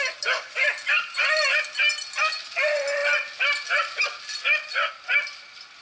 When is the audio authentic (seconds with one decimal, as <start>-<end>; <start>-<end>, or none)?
0.0-5.8